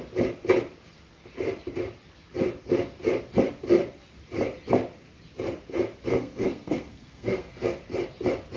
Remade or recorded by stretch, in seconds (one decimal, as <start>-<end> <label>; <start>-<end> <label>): 0.0-6.1 recorded; 6.1-7.8 remade; 7.8-8.6 recorded